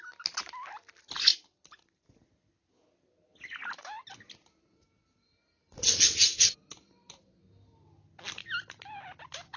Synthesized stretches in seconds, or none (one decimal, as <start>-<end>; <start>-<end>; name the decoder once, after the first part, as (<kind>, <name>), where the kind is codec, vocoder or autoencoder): none